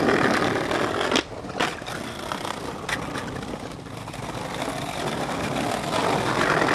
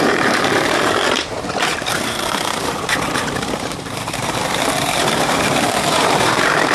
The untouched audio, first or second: first